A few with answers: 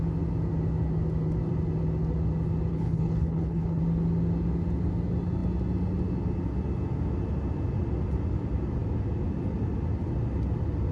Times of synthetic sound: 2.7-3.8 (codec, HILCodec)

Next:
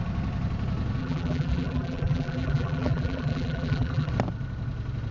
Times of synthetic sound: 1.0-4.1 (vocoder, BigVGAN v2)

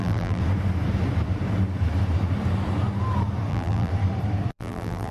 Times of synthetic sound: 0.0-0.4 (vocoder, BigVGAN v2); 3.5-3.9; 4.5-5.1